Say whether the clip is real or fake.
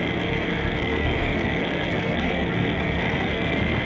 fake